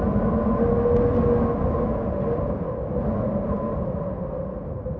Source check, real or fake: real